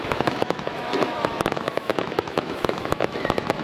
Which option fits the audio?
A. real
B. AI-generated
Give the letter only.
B